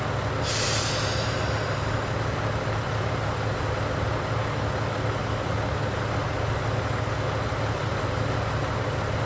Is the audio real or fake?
real